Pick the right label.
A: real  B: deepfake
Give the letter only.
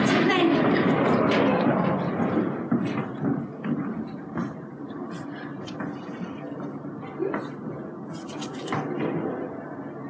B